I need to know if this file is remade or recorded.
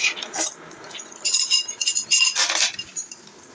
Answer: recorded